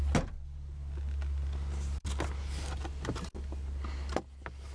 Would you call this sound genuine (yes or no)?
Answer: yes